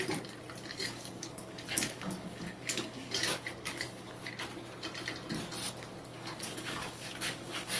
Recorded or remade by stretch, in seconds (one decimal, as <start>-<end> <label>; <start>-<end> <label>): 0.0-0.7 recorded; 0.7-4.3 remade; 4.3-6.1 recorded; 6.1-7.8 remade